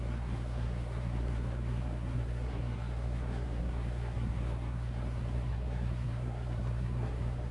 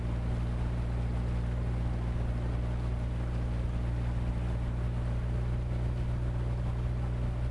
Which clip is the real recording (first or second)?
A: second